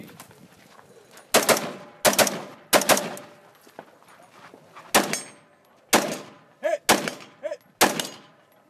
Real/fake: real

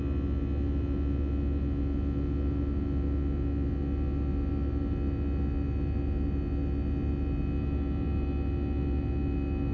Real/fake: real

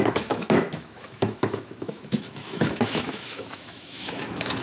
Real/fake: fake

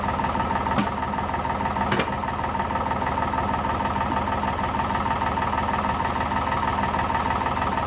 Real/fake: real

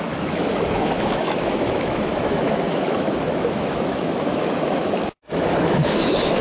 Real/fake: fake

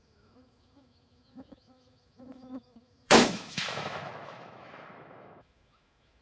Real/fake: fake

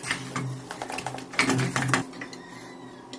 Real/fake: real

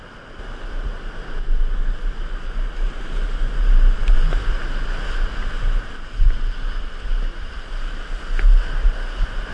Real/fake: real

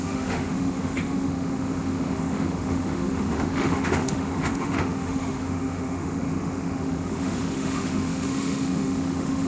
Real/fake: fake